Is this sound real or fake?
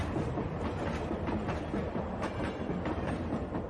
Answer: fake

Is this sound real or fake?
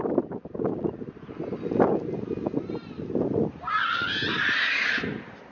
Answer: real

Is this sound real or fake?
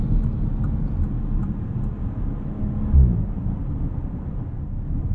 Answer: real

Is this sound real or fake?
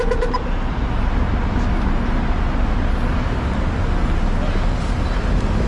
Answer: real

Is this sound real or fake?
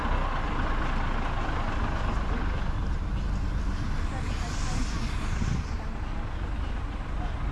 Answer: real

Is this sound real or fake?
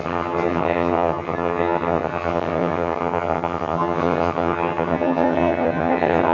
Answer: fake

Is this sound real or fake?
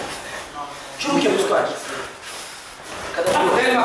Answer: real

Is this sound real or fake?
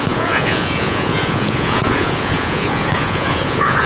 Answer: fake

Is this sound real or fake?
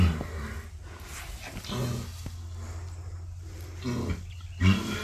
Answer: real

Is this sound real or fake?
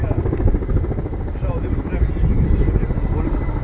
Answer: real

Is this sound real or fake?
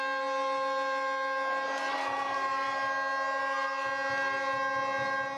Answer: real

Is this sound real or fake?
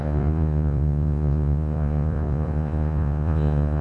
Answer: fake